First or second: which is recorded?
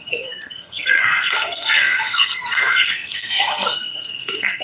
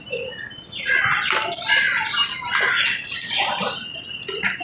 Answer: second